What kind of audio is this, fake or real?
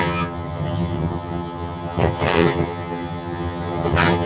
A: fake